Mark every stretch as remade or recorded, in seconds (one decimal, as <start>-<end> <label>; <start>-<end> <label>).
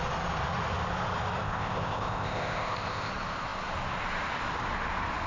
0.0-1.4 recorded; 1.4-3.1 remade; 3.1-5.3 recorded